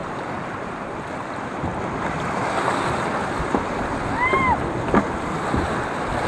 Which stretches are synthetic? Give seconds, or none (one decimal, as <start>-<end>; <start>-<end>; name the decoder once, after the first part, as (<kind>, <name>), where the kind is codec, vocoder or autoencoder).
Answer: 0.0-0.9 (vocoder, BigVGAN v2)

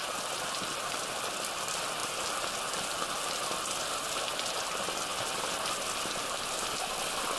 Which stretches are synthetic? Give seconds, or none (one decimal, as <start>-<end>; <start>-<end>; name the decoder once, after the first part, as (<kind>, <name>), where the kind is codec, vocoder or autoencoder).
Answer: 0.0-1.3 (vocoder, BigVGAN v2); 2.0-3.0

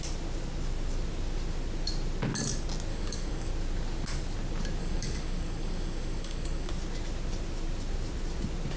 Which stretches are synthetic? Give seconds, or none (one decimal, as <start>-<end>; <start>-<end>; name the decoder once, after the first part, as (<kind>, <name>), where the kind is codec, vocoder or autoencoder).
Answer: 2.9-3.5 (codec, DAC); 4.8-6.7

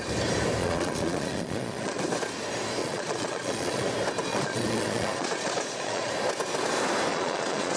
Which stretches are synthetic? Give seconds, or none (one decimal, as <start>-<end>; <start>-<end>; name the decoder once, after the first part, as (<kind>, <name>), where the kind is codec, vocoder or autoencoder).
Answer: 0.6-2.0 (vocoder, Vocos); 2.8-3.9; 4.3-6.1; 7.1-7.8

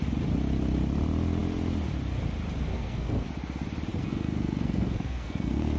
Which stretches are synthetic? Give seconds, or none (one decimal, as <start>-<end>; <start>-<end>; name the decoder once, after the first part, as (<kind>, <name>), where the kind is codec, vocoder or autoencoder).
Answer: 2.7-3.3 (codec, SNAC); 3.9-5.8